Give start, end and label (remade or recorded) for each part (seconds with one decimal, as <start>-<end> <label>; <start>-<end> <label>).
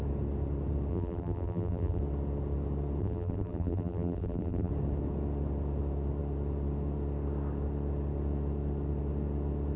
0.0-0.9 recorded; 0.9-2.0 remade; 2.0-3.0 recorded; 3.0-4.7 remade; 4.7-9.8 recorded